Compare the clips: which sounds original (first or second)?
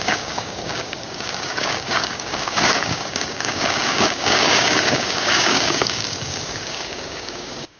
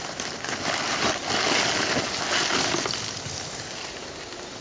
second